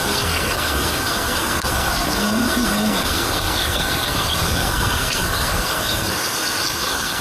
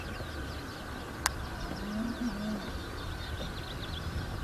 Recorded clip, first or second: second